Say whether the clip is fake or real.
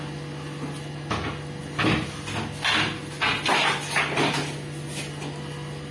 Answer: real